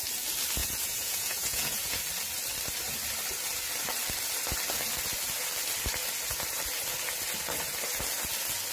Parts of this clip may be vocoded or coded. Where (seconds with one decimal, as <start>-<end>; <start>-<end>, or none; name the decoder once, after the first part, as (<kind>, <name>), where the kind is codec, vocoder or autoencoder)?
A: 0.6-2.0 (vocoder, Vocos)